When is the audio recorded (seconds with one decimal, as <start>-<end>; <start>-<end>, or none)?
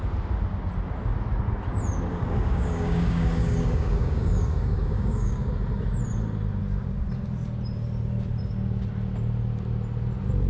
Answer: 0.0-2.1; 5.5-10.5